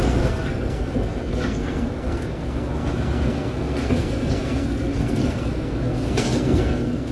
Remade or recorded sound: remade